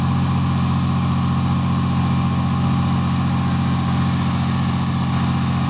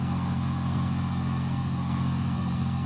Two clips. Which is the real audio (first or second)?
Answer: first